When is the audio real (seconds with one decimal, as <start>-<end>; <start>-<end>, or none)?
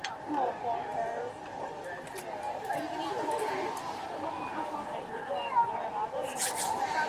0.0-0.9; 5.2-7.1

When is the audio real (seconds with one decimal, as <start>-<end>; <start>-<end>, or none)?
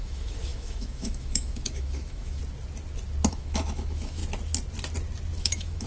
2.4-3.3; 4.2-5.4